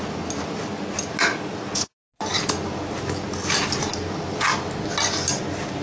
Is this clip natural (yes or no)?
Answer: yes